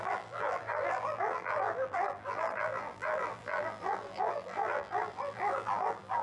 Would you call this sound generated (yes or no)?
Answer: yes